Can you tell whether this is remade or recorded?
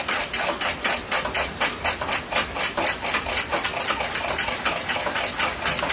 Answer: recorded